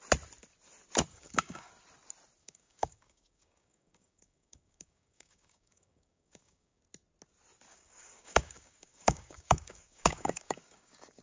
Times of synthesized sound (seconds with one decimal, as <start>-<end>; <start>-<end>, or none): 1.1-1.7; 2.4-6.8; 7.7-11.2